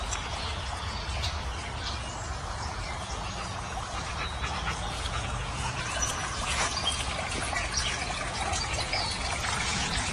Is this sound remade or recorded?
remade